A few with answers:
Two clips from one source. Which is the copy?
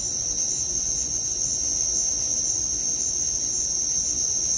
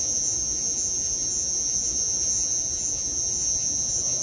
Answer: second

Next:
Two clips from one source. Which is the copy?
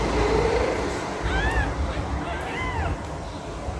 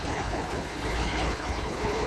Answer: second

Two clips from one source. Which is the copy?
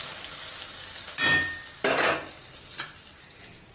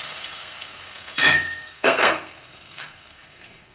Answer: second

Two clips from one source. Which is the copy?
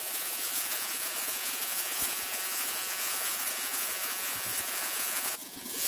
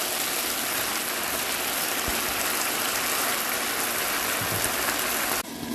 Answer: first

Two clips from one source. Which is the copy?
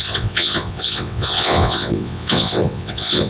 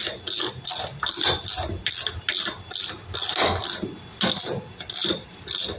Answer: first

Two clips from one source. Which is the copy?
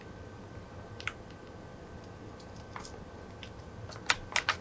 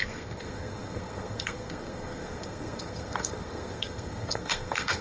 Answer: second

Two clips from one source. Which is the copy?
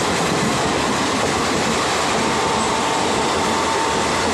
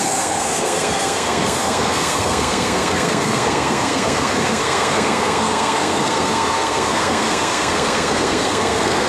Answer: second